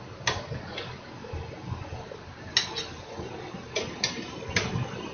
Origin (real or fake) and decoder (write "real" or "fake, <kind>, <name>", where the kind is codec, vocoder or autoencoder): real